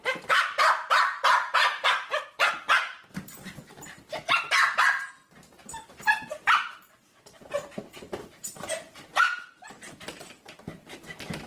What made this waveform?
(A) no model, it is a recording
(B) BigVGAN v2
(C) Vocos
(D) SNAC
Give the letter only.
B